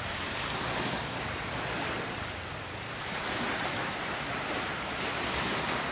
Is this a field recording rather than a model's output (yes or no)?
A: no